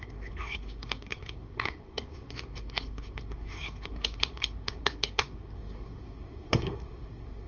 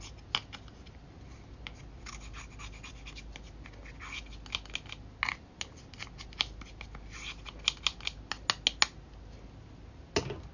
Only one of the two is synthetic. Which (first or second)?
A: first